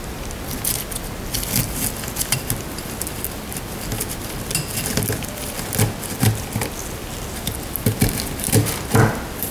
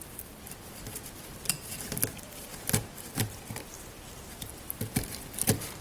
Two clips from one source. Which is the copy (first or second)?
second